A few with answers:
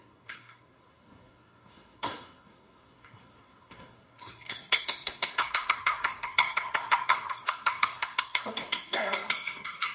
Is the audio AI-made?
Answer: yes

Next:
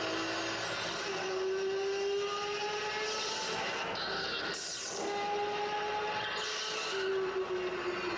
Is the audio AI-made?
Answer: no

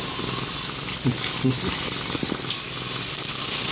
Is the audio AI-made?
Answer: no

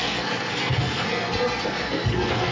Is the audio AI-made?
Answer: yes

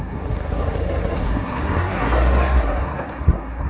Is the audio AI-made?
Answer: yes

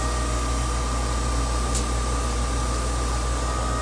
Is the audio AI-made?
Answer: no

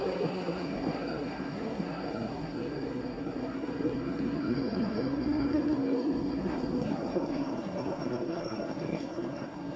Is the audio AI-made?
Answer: yes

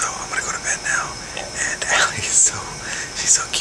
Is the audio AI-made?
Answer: no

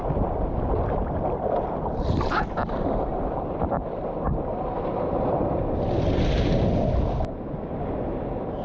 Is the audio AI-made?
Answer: no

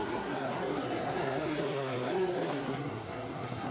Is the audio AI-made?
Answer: yes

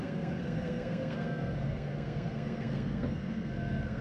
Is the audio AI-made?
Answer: yes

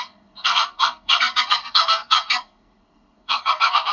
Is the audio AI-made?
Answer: yes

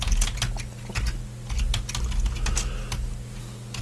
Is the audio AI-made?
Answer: no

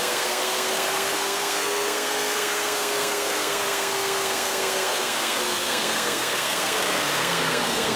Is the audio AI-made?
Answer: yes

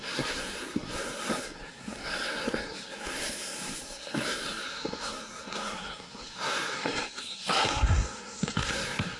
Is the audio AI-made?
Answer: yes